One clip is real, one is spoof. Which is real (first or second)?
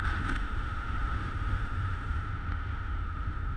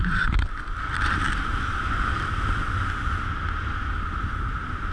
second